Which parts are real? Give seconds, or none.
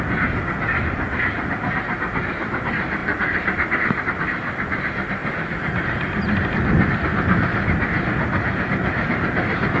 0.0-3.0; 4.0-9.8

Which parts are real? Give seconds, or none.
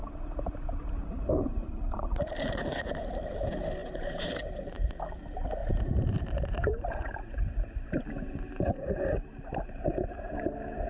2.1-3.8; 5.0-5.6; 8.9-10.9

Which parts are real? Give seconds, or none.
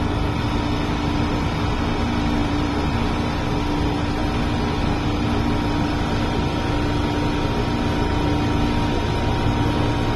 0.0-2.4; 3.0-10.2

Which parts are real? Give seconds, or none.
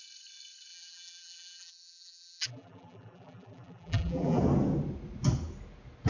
0.0-0.7; 4.4-6.1